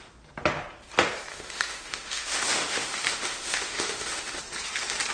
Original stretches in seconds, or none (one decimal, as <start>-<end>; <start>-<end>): 0.0-1.3; 4.4-5.1